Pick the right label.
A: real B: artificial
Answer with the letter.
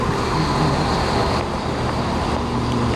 A